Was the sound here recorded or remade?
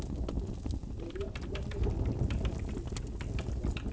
recorded